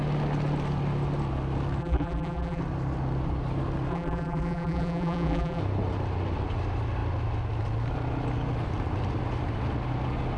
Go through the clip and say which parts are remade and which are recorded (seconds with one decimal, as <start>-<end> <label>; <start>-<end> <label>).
0.0-1.8 recorded; 1.8-2.6 remade; 2.6-3.9 recorded; 3.9-5.6 remade; 5.6-10.4 recorded